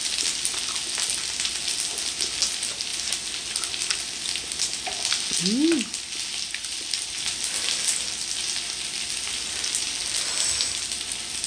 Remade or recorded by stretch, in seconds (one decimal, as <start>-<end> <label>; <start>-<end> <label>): 0.0-11.5 recorded